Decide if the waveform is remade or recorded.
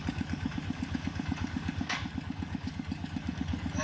remade